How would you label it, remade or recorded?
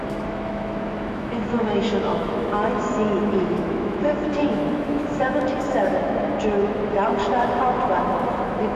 remade